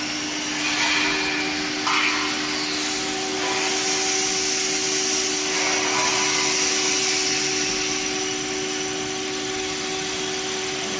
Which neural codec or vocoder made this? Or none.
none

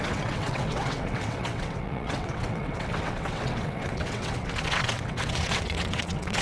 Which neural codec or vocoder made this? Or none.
vocoder, WaveNeXt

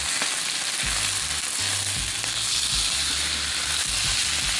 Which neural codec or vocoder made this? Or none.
none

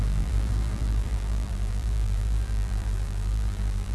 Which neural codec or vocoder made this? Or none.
vocoder, BigVGAN v2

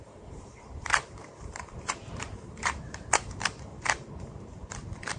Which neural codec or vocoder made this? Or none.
vocoder, BigVGAN v2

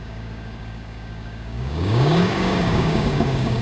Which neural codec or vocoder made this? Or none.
codec, DAC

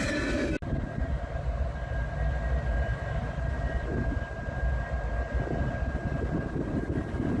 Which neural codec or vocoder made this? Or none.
none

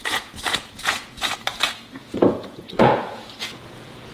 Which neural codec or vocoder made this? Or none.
vocoder, Vocos